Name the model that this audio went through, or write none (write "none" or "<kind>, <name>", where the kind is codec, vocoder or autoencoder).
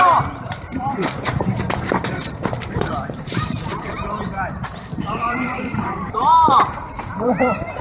vocoder, BigVGAN v2